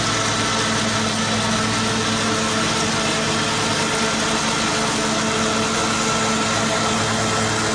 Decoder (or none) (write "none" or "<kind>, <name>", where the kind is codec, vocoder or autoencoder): none